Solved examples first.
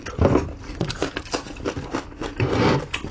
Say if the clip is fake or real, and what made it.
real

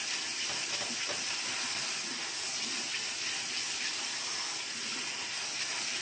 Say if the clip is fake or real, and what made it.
real